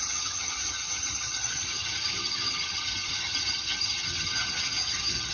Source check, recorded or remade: remade